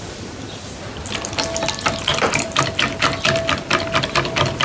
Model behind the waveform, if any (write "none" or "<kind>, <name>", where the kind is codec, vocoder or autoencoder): none